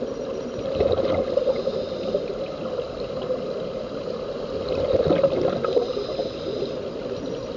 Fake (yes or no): no